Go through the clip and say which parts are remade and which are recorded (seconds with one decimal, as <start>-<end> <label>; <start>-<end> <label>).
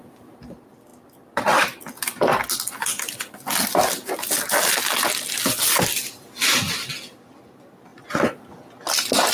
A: 0.0-9.3 recorded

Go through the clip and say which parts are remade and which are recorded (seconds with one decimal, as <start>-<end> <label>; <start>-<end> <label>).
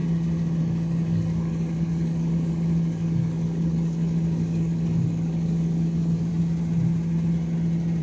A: 0.0-0.6 recorded; 0.6-6.3 remade; 6.3-8.0 recorded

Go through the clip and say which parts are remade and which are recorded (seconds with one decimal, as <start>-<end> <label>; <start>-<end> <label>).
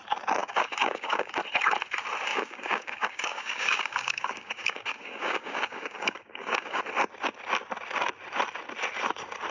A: 0.0-0.4 recorded; 0.4-1.3 remade; 1.3-2.3 recorded; 2.3-6.8 remade; 6.8-9.5 recorded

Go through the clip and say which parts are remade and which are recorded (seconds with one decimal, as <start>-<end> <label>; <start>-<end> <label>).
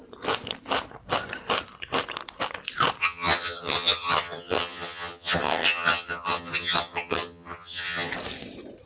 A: 0.0-3.0 recorded; 3.0-8.1 remade; 8.1-8.9 recorded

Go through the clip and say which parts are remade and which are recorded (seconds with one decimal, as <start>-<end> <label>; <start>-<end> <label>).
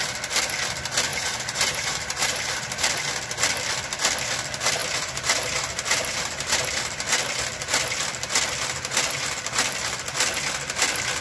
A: 0.0-1.1 recorded; 1.1-3.0 remade; 3.0-4.8 recorded; 4.8-6.6 remade; 6.6-11.2 recorded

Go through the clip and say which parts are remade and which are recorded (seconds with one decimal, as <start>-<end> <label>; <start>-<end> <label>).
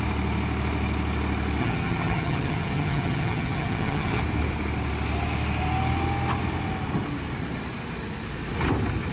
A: 0.0-1.6 recorded; 1.6-4.2 remade; 4.2-9.1 recorded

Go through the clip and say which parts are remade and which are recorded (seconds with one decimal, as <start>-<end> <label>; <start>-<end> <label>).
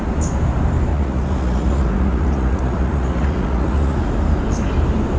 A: 0.0-0.9 recorded; 0.9-4.0 remade; 4.0-5.2 recorded